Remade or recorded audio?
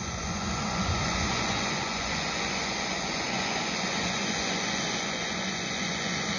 remade